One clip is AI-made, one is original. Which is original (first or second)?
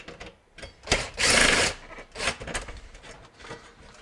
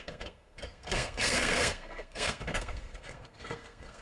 first